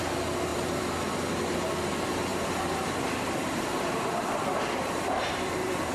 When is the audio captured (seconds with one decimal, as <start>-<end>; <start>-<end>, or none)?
0.0-0.5; 1.6-2.3